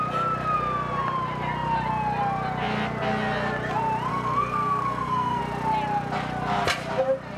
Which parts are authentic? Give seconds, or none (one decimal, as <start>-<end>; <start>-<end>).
0.0-4.1; 5.4-7.4